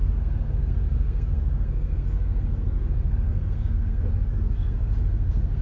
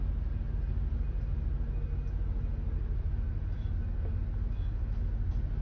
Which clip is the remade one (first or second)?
first